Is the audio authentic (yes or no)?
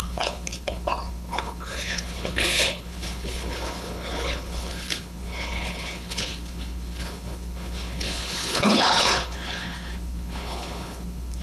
no